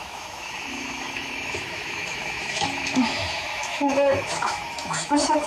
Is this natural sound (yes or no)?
no